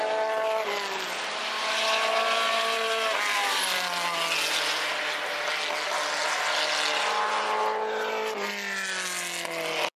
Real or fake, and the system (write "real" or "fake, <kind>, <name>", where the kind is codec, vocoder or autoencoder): real